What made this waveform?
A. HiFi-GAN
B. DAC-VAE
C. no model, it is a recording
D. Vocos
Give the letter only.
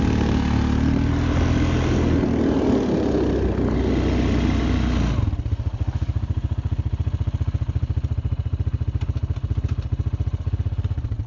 C